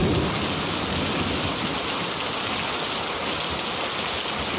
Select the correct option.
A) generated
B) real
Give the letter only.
B